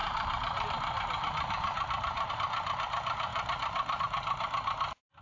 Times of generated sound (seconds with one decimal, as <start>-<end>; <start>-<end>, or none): 0.0-2.3; 3.3-4.0